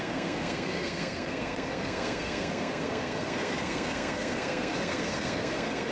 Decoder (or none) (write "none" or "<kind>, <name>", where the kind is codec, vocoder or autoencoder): codec, SNAC